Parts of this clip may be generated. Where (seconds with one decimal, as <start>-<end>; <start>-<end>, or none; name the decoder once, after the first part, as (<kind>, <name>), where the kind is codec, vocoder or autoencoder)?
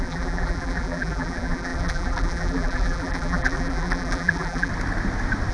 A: 0.0-4.7 (vocoder, BigVGAN v2)